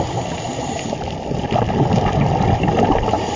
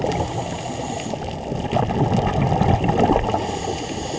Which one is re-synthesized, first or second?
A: first